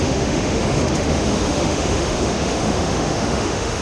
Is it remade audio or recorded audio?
remade